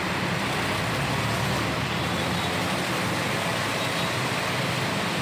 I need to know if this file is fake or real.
real